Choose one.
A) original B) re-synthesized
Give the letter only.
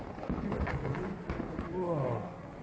A